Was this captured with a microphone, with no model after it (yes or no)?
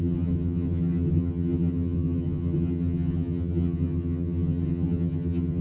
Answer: no